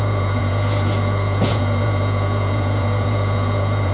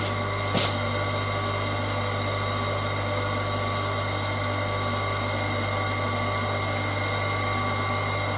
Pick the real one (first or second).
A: second